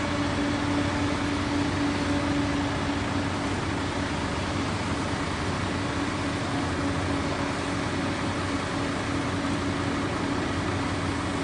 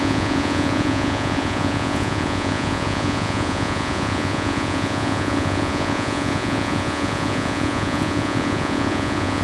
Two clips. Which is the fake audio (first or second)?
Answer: second